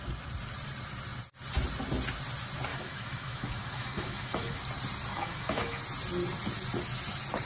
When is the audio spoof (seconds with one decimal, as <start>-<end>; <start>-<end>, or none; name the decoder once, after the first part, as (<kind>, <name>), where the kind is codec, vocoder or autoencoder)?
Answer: 2.7-4.6 (autoencoder, DAC-VAE); 5.1-5.8